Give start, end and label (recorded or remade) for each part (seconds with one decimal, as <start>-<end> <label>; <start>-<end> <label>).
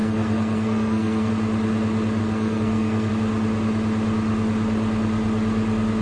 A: 0.0-1.3 remade; 1.3-2.2 recorded; 2.2-3.1 remade; 3.1-6.0 recorded